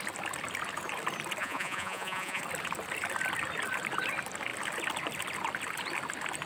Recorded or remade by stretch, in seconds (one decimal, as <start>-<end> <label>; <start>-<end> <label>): 0.0-1.4 recorded; 1.4-2.4 remade; 2.4-6.5 recorded